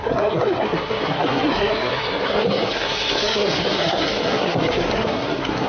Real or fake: fake